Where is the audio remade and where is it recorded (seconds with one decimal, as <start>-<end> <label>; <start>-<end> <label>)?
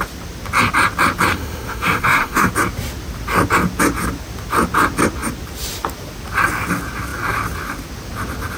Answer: 0.0-1.3 recorded; 1.3-2.5 remade; 2.5-8.6 recorded